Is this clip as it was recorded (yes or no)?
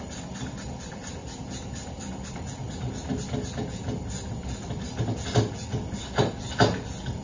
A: yes